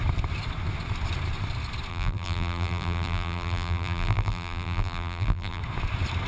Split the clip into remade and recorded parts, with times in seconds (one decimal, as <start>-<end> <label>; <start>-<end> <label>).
0.0-1.9 recorded; 1.9-5.6 remade; 5.6-6.3 recorded